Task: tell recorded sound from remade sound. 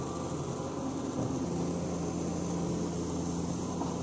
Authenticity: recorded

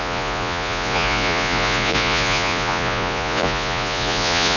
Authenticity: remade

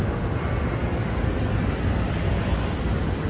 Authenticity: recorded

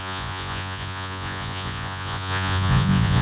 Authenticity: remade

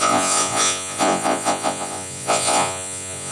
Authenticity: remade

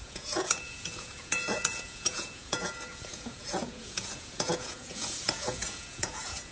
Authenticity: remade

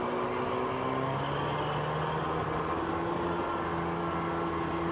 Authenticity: recorded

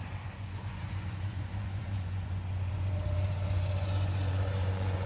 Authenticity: remade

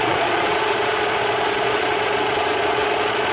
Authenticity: remade